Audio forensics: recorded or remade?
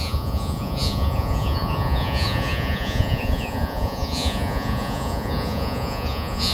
remade